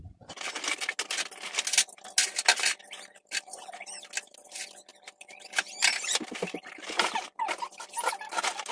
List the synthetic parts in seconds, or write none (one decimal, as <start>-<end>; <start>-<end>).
none